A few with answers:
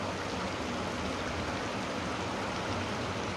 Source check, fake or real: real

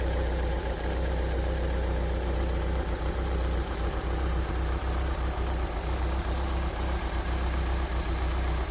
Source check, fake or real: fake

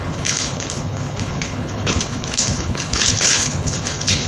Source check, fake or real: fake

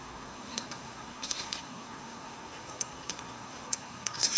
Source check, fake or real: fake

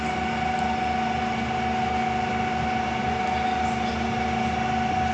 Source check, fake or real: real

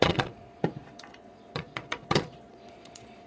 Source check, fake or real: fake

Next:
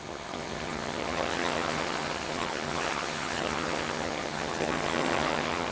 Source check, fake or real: fake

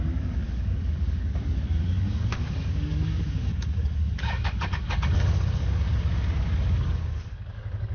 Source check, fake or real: fake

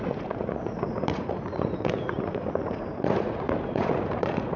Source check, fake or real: fake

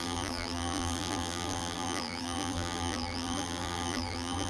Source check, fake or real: fake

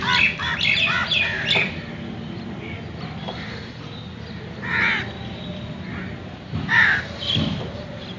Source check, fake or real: real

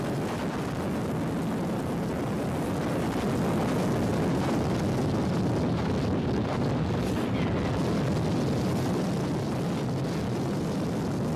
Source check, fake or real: real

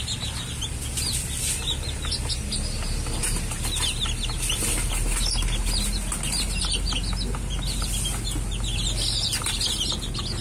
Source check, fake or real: real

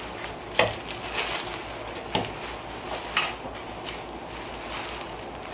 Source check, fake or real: real